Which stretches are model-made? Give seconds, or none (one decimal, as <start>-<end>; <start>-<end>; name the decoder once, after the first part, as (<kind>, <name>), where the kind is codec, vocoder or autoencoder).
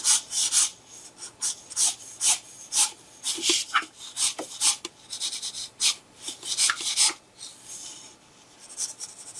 none